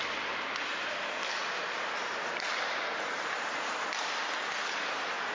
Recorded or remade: recorded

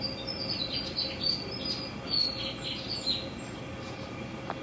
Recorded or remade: recorded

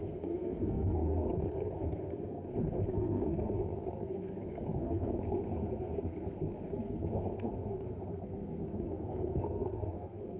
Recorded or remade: remade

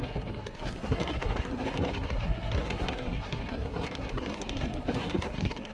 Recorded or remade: remade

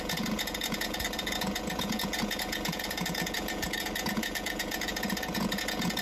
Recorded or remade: remade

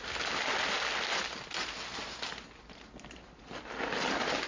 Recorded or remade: recorded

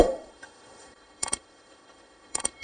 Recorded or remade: remade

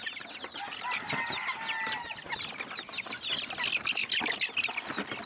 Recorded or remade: recorded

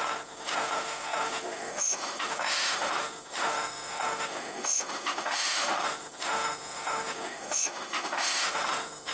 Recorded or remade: remade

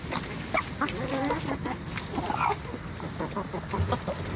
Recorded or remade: recorded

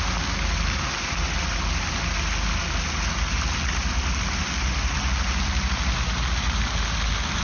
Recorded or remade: recorded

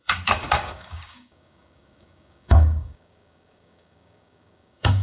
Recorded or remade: remade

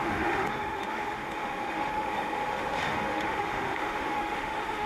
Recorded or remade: remade